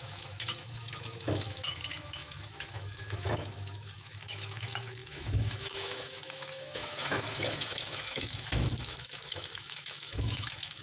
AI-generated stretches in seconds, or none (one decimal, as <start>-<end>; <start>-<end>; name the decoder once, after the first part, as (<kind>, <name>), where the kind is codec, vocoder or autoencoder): 0.0-10.8 (autoencoder, DAC-VAE)